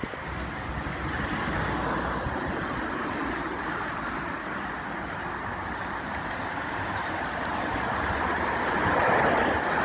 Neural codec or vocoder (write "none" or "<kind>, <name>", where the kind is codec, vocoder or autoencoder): none